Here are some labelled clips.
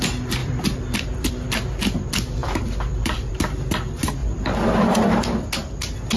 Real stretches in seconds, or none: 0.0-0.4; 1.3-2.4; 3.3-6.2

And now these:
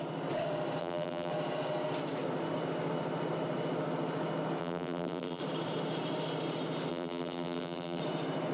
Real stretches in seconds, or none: 0.0-0.8; 1.3-4.6; 5.4-6.9; 8.0-8.5

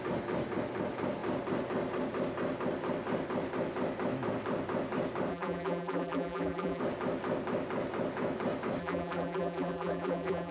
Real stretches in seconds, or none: 0.0-5.3; 6.8-8.8

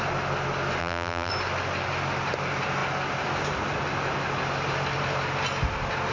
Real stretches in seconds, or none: 0.0-0.8; 1.3-6.1